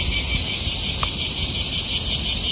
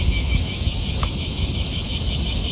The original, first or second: first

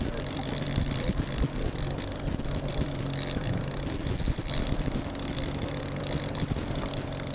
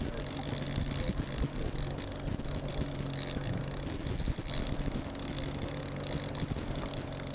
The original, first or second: second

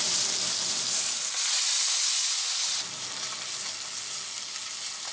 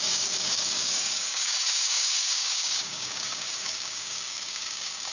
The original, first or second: first